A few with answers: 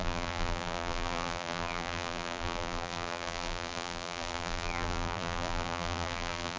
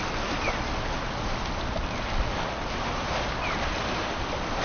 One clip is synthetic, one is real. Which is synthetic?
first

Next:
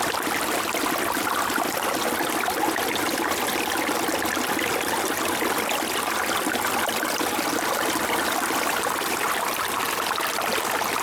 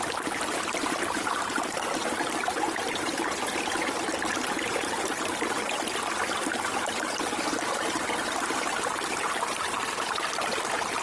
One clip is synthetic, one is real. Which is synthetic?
second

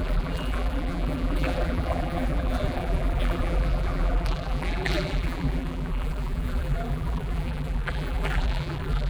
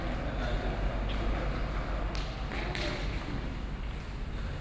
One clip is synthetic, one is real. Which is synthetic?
first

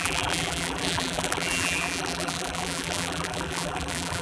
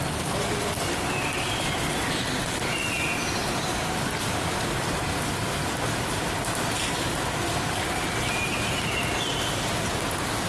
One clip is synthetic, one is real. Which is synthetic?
first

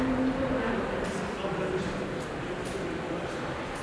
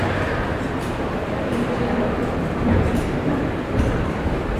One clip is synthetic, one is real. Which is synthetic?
second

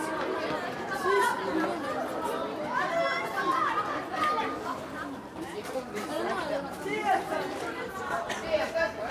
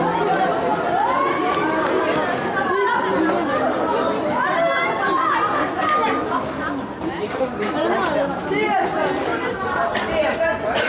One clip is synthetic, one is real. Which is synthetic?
first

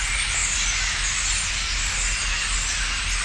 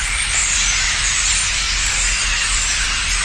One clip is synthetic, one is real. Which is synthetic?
second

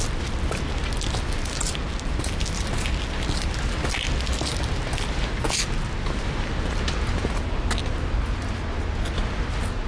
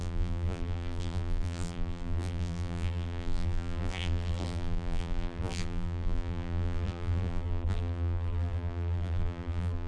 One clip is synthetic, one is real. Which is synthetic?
second